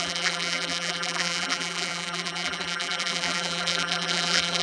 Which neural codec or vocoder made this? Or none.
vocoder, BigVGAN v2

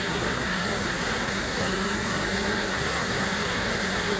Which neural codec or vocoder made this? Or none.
codec, SNAC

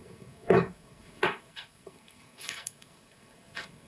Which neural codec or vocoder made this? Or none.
codec, SNAC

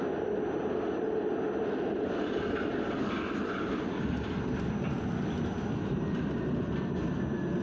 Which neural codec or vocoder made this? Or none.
none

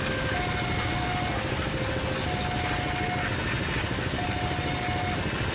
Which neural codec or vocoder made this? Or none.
none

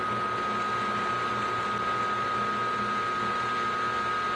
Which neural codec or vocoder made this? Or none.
none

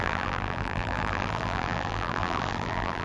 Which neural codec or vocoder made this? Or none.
vocoder, BigVGAN v2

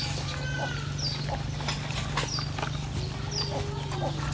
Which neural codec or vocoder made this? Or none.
none